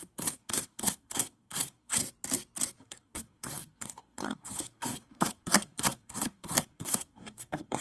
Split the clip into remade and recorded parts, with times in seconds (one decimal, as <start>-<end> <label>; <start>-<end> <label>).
0.0-2.0 remade; 2.0-2.8 recorded; 2.8-7.8 remade

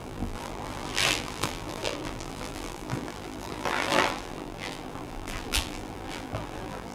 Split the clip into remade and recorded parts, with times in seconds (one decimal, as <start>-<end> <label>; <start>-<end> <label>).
0.0-6.9 remade

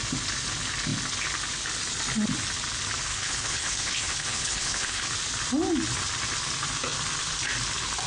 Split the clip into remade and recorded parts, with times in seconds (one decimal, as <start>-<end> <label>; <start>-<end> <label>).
0.0-3.1 recorded; 3.1-5.1 remade; 5.1-8.1 recorded

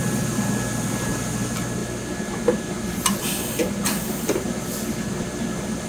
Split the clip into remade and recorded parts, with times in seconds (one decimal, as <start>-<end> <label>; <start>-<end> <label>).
0.0-1.8 recorded; 1.8-2.7 remade; 2.7-3.6 recorded; 3.6-4.6 remade; 4.6-5.9 recorded

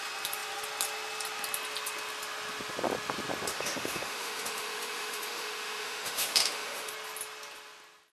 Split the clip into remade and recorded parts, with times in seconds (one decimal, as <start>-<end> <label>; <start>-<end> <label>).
0.0-3.5 recorded; 3.5-6.9 remade; 6.9-8.1 recorded